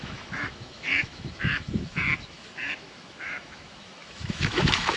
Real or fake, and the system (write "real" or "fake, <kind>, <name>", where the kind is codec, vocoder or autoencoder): fake, autoencoder, DAC-VAE